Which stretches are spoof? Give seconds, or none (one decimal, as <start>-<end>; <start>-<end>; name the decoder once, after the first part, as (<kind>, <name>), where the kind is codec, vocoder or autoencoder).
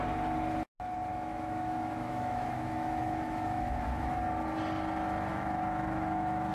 1.1-4.2 (autoencoder, DAC-VAE); 5.3-6.5